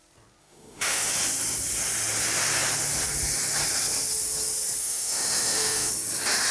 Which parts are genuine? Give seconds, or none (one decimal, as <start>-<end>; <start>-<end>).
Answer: 0.0-0.4; 1.1-4.8; 5.9-6.5